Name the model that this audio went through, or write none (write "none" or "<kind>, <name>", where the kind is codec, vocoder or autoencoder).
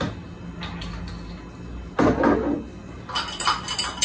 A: none